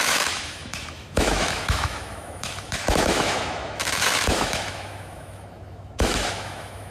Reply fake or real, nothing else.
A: fake